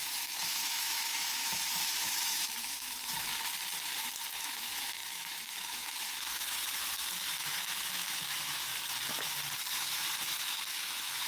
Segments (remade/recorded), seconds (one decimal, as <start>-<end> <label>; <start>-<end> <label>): 0.0-3.3 remade; 3.3-4.4 recorded; 4.4-8.7 remade; 8.7-9.7 recorded; 9.7-11.3 remade